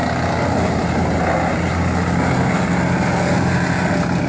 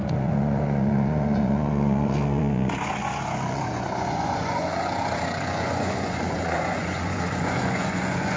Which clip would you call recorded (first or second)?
first